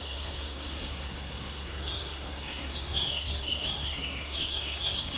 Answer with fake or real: fake